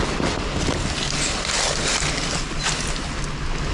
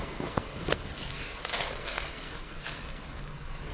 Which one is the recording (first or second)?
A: first